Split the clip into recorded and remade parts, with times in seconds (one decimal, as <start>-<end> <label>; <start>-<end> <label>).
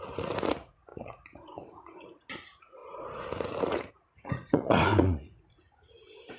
0.0-6.4 remade